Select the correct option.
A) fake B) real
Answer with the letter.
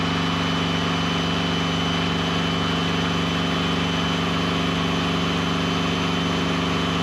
B